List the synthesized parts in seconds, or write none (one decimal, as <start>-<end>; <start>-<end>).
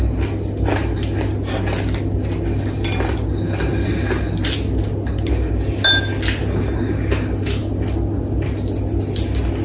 none